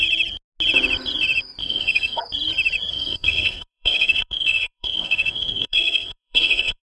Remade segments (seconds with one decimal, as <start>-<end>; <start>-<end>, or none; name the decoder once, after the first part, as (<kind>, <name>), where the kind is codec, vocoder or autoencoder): 1.6-2.2 (codec, SNAC); 2.9-6.8